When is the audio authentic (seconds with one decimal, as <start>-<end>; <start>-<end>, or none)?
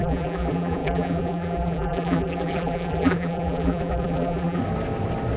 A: 4.6-5.4